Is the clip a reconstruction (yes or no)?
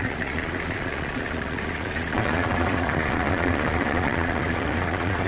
yes